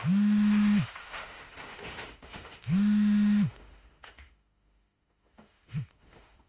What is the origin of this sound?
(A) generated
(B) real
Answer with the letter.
A